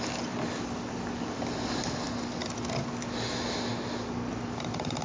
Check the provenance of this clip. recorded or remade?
recorded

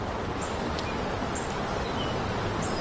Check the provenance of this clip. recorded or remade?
recorded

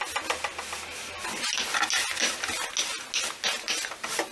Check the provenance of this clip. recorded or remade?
recorded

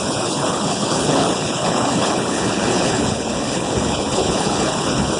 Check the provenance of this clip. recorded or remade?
remade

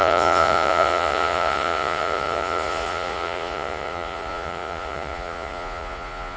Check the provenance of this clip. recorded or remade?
remade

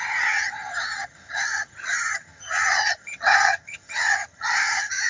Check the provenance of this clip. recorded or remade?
remade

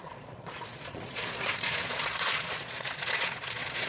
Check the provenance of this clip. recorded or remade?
remade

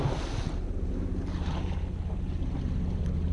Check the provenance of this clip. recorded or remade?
recorded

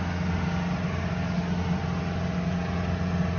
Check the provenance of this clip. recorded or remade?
recorded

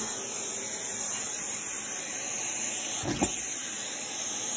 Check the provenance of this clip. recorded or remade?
recorded